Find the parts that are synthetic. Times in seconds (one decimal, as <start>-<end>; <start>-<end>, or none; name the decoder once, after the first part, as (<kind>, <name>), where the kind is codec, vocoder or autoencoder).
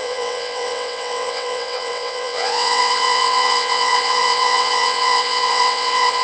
0.0-6.2 (vocoder, WaveNeXt)